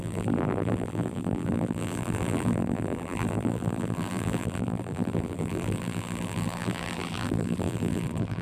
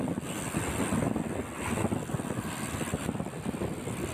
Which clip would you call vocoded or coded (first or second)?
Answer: first